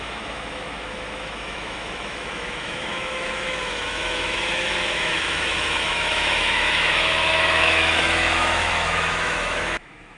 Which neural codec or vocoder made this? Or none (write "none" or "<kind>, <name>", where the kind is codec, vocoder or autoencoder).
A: autoencoder, DAC-VAE